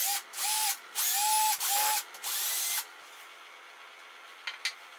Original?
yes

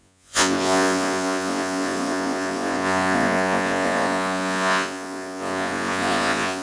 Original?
no